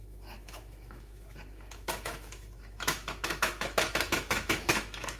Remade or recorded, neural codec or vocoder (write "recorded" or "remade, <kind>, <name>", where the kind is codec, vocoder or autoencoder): remade, autoencoder, DAC-VAE